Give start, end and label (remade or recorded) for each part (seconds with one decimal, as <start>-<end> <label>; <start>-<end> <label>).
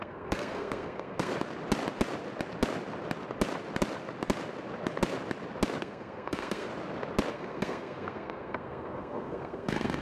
0.0-1.3 remade; 1.3-5.8 recorded; 5.8-6.7 remade; 6.7-7.3 recorded; 7.3-10.0 remade